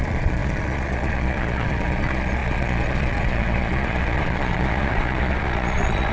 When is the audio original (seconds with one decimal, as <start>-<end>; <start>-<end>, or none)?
none